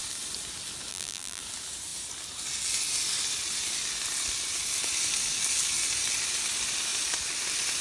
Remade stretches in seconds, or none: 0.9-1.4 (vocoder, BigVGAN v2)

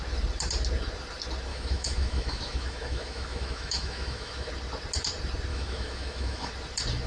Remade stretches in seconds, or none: 1.5-4.5 (autoencoder, DAC-VAE); 5.5-6.5